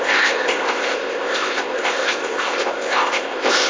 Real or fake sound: fake